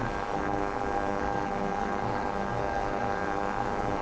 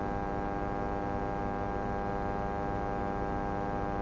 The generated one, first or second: first